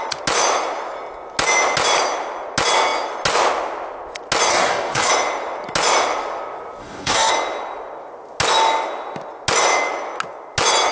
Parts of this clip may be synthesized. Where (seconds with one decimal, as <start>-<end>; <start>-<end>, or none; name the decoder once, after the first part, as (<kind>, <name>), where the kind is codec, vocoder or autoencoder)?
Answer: 4.5-5.1 (codec, DAC); 6.8-7.3